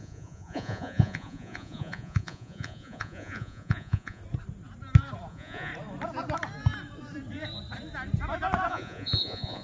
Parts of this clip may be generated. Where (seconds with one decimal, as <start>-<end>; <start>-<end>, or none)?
0.0-4.2; 5.3-5.7; 8.7-9.6